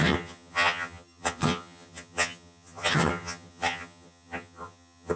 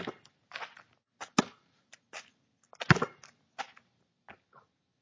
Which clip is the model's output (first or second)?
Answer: first